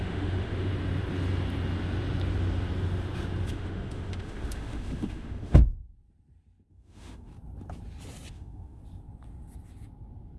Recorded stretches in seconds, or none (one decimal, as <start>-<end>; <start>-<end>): 0.7-3.5; 5.7-6.7; 7.3-8.3; 8.8-10.4